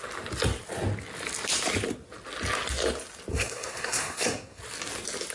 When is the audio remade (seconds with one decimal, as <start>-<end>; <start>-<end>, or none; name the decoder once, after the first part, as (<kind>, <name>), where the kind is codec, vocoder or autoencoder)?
3.3-4.6 (codec, SNAC)